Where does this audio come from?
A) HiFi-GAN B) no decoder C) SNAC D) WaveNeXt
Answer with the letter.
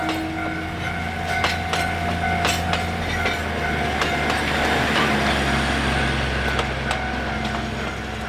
B